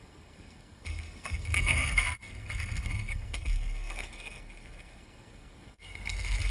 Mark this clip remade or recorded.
remade